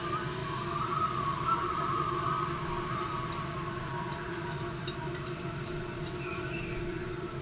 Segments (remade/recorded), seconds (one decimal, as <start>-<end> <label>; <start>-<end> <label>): 0.0-7.4 recorded